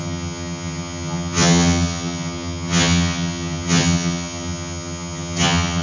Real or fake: fake